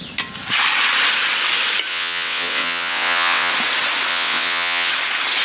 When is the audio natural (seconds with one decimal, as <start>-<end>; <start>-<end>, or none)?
0.0-1.9; 3.5-4.1; 4.9-5.4